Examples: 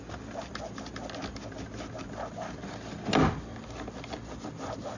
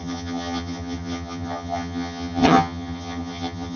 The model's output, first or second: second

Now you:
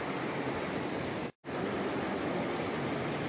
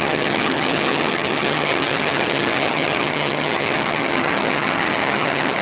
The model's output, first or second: second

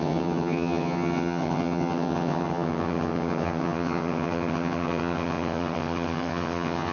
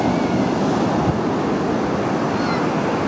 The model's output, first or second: first